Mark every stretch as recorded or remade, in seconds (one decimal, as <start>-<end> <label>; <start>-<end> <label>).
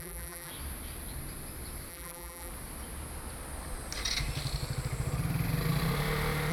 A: 0.0-0.5 remade; 0.5-1.9 recorded; 1.9-2.5 remade; 2.5-6.5 recorded